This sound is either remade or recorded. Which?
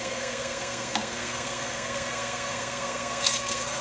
remade